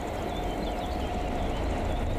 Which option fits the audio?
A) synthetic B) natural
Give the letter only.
B